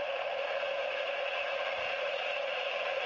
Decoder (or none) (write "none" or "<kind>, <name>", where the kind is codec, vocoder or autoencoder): vocoder, Vocos